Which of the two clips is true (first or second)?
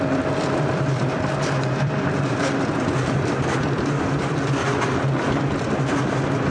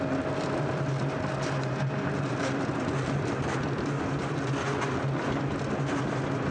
second